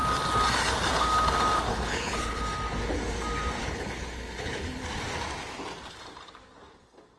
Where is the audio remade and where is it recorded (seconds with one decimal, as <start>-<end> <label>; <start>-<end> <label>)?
0.0-1.7 recorded; 1.7-2.4 remade; 2.4-3.6 recorded; 3.6-4.8 remade; 4.8-7.2 recorded